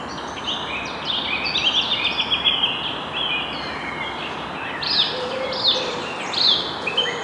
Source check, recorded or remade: recorded